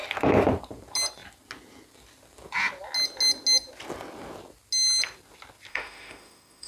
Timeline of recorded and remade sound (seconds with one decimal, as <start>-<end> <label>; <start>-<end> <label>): 0.0-5.7 recorded; 5.7-6.7 remade